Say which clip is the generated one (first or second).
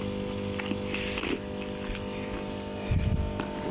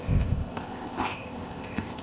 second